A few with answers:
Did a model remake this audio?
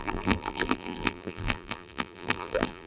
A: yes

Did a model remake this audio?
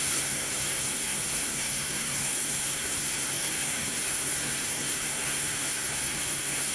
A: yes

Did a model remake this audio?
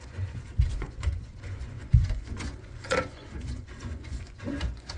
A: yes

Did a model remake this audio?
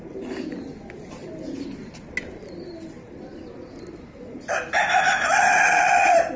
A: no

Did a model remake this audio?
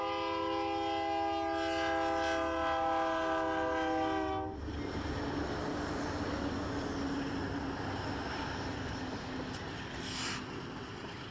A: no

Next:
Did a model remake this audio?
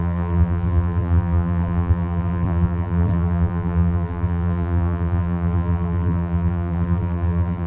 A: yes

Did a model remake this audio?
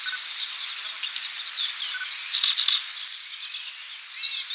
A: no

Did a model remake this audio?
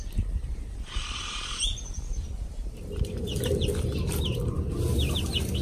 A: no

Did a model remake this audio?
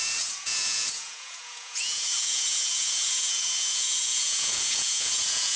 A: yes